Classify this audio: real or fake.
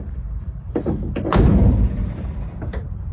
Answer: fake